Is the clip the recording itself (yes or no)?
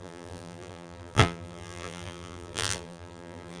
no